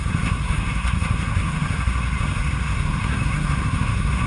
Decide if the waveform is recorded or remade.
remade